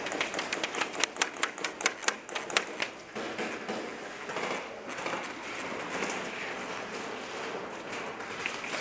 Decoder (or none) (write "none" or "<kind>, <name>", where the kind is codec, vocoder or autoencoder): none